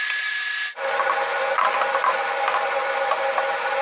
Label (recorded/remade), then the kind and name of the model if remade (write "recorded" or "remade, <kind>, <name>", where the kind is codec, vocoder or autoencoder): recorded